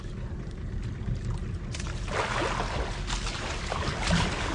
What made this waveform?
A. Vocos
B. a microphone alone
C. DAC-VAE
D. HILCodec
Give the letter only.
B